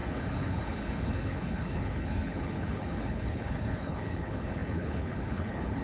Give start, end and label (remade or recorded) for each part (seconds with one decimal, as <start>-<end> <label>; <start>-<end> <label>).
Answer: 0.0-5.8 remade